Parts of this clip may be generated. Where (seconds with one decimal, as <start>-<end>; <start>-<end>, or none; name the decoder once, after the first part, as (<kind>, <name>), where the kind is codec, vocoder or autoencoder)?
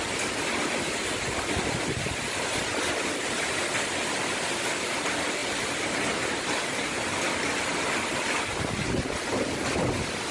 none